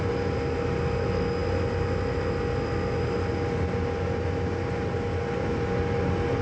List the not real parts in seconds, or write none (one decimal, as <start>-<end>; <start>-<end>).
none